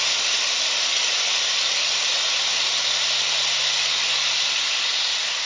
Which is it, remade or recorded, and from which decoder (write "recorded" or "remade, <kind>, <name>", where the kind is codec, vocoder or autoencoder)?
recorded